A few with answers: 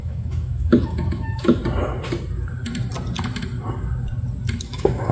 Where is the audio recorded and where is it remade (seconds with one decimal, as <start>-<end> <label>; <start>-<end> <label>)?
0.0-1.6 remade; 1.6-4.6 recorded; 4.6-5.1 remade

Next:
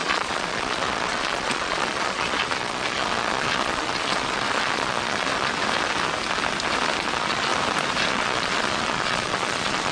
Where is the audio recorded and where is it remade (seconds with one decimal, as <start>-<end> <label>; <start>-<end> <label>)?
0.0-5.5 remade; 5.5-7.0 recorded; 7.0-7.5 remade; 7.5-8.1 recorded; 8.1-9.9 remade

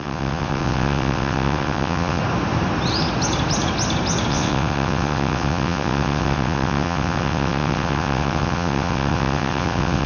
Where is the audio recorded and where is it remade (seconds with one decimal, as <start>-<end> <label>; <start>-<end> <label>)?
0.0-2.2 remade; 2.2-4.3 recorded; 4.3-10.1 remade

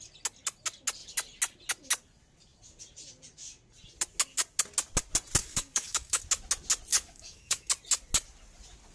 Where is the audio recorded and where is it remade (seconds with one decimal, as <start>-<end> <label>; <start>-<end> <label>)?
0.0-5.4 recorded; 5.4-6.2 remade; 6.2-6.9 recorded; 6.9-7.7 remade; 7.7-8.9 recorded

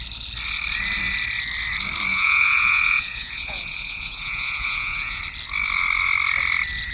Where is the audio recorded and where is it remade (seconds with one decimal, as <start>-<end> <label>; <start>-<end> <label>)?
0.0-2.1 recorded; 2.1-5.2 remade; 5.2-6.9 recorded

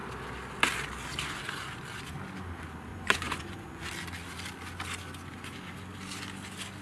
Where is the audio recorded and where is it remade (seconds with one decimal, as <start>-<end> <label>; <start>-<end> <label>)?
0.0-2.9 recorded; 2.9-3.9 remade; 3.9-6.8 recorded

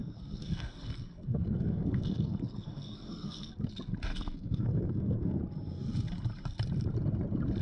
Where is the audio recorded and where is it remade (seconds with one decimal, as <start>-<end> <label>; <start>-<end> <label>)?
0.0-3.5 remade; 3.5-4.1 recorded; 4.1-5.4 remade; 5.4-7.6 recorded

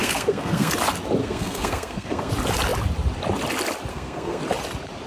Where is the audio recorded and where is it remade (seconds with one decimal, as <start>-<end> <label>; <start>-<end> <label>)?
0.0-0.7 remade; 0.7-1.2 recorded; 1.2-2.3 remade; 2.3-3.9 recorded; 3.9-4.4 remade; 4.4-5.1 recorded